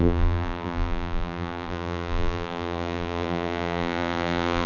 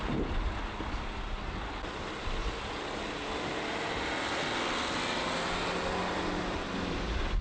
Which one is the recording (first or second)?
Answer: second